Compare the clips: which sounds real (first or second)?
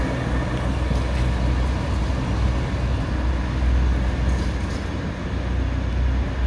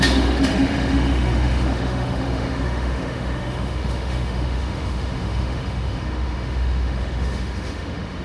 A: first